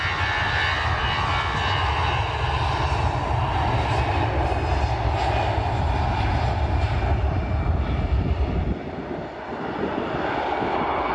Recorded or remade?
recorded